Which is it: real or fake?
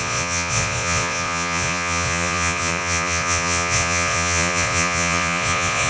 fake